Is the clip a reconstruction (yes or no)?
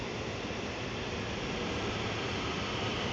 no